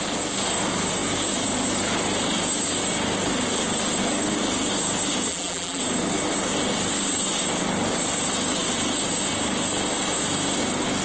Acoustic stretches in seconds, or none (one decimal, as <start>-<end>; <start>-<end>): 0.0-5.3; 5.8-11.0